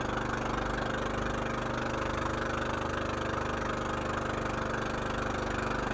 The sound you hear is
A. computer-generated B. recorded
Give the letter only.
B